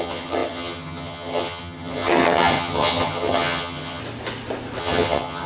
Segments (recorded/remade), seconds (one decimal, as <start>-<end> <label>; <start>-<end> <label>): 0.0-4.0 remade; 4.0-4.8 recorded; 4.8-5.5 remade